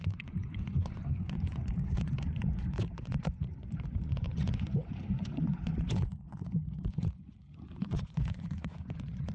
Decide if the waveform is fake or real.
fake